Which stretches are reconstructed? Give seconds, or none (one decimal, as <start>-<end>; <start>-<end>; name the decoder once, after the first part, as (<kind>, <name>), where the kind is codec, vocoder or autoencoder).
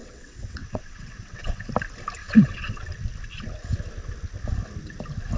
0.0-1.7 (vocoder, WaveNeXt); 2.2-2.8